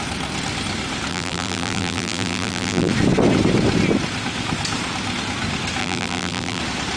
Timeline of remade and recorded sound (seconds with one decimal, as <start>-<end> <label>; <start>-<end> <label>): 0.0-1.1 recorded; 1.1-2.9 remade; 2.9-5.8 recorded; 5.8-6.6 remade; 6.6-7.0 recorded